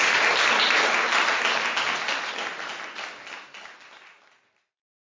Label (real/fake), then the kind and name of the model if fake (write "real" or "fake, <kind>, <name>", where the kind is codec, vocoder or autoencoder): real